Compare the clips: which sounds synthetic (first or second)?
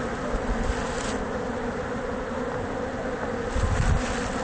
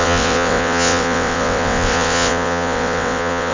second